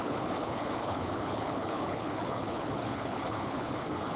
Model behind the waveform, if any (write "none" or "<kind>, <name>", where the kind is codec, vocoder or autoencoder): codec, HILCodec